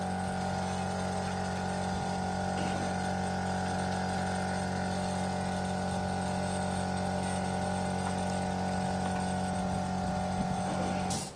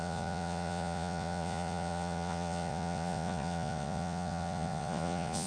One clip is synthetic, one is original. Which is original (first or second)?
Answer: first